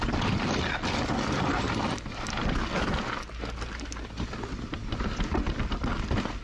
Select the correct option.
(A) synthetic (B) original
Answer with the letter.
B